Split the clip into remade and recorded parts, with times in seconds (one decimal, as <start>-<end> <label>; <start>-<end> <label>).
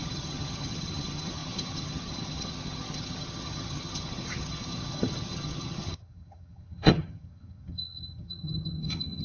0.0-9.2 remade